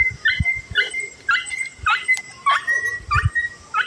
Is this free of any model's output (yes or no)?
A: yes